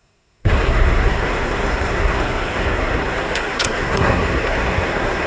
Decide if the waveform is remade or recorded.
remade